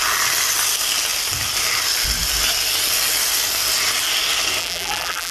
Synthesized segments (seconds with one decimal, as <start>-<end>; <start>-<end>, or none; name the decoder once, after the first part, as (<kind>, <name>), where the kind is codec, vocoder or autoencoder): 4.6-5.3 (vocoder, BigVGAN v2)